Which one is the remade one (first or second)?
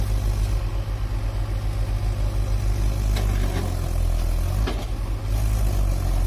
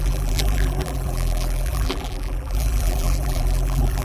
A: second